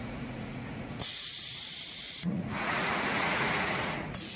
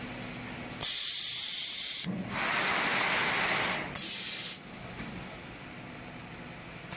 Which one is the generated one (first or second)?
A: first